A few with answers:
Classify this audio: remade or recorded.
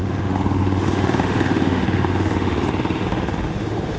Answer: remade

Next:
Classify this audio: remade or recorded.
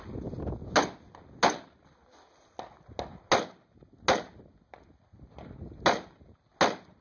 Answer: recorded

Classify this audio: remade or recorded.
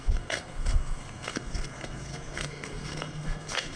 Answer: remade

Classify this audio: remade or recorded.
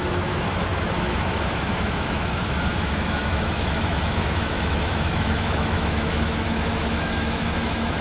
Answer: remade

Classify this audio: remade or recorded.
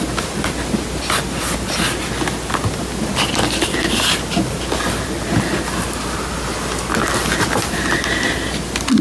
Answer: recorded